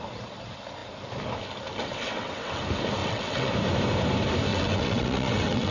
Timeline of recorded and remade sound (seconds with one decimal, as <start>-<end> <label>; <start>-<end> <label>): 0.0-1.8 recorded; 1.8-2.6 remade; 2.6-3.0 recorded; 3.0-3.5 remade; 3.5-4.5 recorded; 4.5-5.7 remade